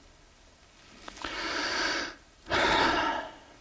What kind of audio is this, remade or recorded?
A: recorded